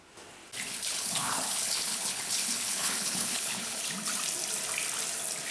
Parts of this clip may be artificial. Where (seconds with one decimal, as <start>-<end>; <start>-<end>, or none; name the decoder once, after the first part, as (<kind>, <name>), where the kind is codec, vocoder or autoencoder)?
0.7-3.8 (codec, HILCodec)